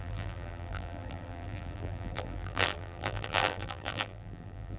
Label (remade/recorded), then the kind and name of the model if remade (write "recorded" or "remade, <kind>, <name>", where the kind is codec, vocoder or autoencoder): remade, vocoder, BigVGAN v2